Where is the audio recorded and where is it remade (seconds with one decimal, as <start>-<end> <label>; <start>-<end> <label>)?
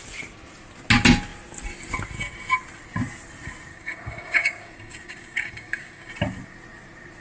0.0-3.7 recorded; 3.7-6.1 remade; 6.1-7.2 recorded